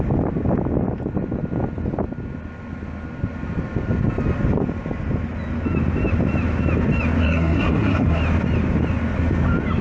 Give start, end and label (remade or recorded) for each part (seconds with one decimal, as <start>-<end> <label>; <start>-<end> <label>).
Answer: 0.0-7.2 recorded; 7.2-8.2 remade; 8.2-9.8 recorded